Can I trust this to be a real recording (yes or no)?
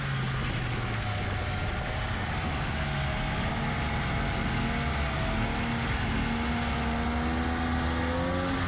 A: yes